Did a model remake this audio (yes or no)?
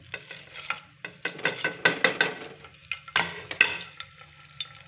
no